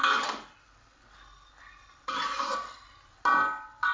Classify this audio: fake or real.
real